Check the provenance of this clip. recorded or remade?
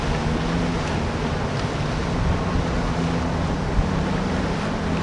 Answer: recorded